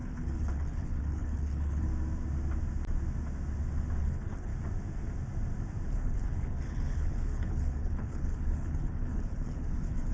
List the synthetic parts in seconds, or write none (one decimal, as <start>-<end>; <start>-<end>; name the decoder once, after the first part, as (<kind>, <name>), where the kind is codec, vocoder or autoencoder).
0.0-1.9 (codec, HILCodec); 4.0-4.5; 5.9-10.1